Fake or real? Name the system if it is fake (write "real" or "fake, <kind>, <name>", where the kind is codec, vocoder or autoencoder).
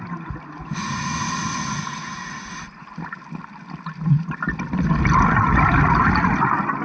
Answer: real